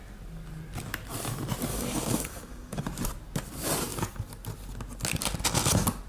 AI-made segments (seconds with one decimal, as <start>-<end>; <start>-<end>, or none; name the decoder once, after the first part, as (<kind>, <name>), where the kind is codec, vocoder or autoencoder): 1.7-2.8 (codec, DAC)